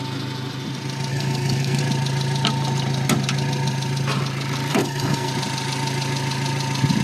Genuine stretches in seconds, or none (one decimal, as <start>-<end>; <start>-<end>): 0.0-1.1; 1.8-4.7; 5.3-7.0